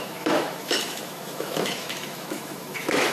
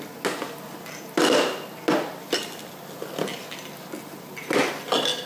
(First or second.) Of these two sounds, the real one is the second